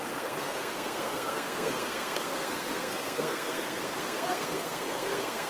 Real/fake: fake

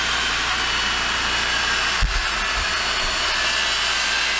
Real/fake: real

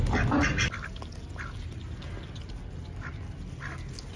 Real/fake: real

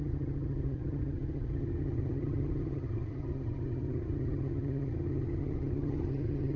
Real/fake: fake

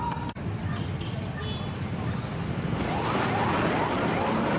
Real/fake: real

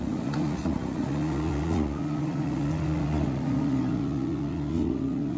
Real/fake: fake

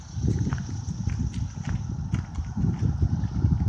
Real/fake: real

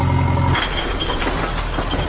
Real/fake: real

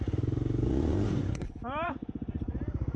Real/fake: fake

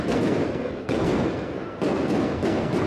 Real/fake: fake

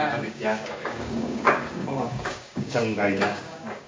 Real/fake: fake